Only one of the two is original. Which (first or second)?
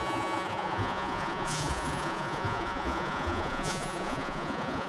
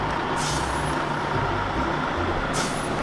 second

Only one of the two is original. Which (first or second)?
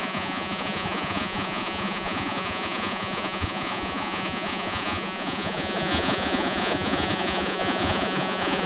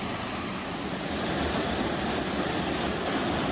second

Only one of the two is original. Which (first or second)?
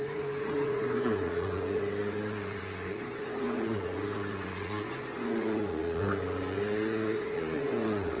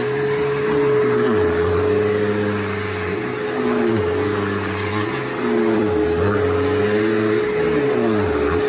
second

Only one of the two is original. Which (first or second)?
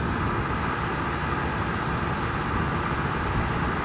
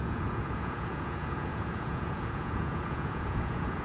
first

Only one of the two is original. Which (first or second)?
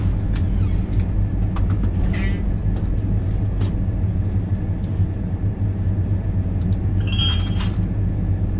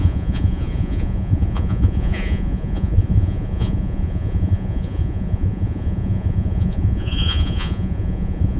first